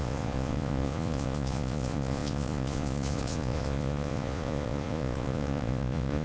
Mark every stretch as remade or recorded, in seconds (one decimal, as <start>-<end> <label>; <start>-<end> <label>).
0.0-6.2 remade